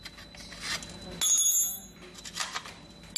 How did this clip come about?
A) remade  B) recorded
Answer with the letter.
B